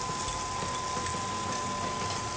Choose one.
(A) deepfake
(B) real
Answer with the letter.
B